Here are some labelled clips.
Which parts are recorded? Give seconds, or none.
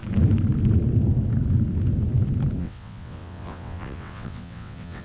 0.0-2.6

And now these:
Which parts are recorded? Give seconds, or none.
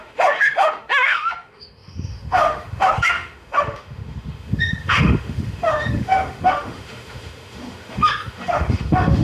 none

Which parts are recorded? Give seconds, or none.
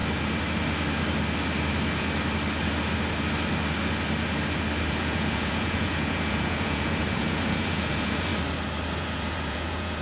0.0-4.9; 8.3-9.0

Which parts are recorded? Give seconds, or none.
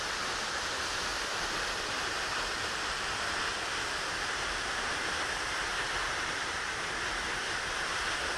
0.0-1.1; 3.4-5.7; 6.7-8.4